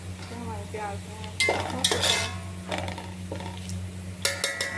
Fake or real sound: real